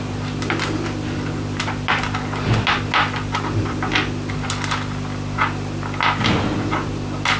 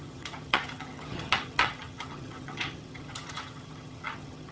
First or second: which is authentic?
first